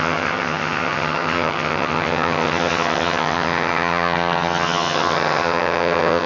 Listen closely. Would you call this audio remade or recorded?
remade